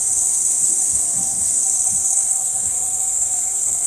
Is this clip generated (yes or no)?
yes